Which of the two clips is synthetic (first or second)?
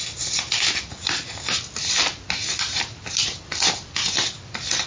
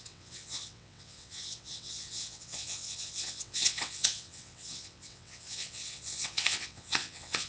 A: second